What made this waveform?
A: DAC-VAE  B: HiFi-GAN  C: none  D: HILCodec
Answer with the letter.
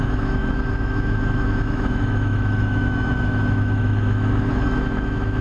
A